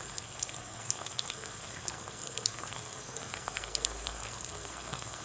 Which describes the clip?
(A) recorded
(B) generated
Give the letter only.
B